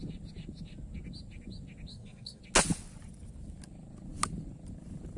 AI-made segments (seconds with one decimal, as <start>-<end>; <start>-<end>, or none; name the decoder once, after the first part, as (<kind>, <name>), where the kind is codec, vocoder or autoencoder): 1.9-2.4 (codec, SNAC)